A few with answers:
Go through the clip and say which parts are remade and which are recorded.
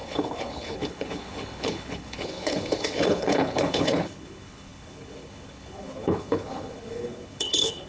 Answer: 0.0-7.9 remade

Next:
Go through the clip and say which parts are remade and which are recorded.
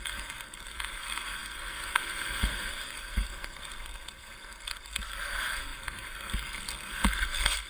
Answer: 0.0-7.7 remade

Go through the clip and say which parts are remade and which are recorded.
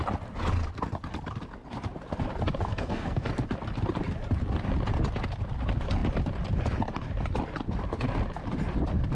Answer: 0.0-2.7 recorded; 2.7-3.3 remade; 3.3-9.2 recorded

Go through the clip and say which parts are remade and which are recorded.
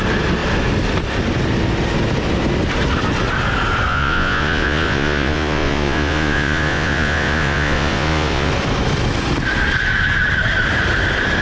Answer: 0.0-3.9 recorded; 3.9-8.5 remade; 8.5-11.4 recorded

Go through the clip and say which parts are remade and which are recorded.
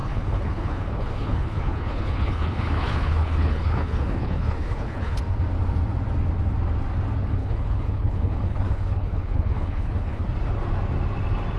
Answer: 0.0-5.2 remade; 5.2-7.4 recorded; 7.4-10.2 remade; 10.2-11.6 recorded